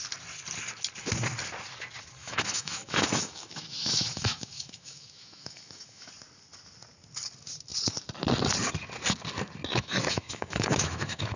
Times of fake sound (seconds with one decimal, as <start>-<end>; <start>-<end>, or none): 2.2-6.1; 9.7-11.4